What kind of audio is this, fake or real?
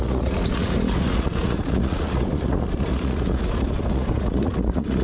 fake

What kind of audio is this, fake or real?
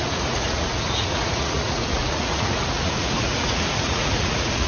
fake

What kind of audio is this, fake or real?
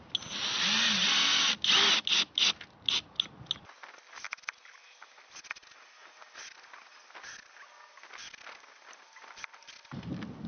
real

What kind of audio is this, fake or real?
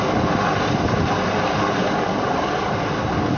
real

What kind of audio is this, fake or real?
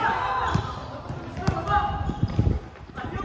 real